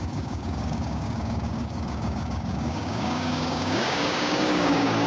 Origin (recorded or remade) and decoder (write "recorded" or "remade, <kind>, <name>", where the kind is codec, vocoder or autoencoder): remade, codec, DAC